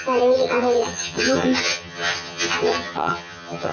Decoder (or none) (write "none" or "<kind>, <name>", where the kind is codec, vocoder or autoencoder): vocoder, HiFi-GAN